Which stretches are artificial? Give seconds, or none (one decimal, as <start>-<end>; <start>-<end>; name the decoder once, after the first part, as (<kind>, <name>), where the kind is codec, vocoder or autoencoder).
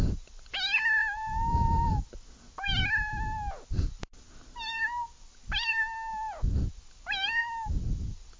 1.0-1.9 (vocoder, BigVGAN v2)